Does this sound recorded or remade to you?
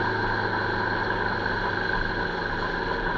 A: recorded